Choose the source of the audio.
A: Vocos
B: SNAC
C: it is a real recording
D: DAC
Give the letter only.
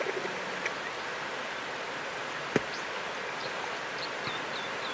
C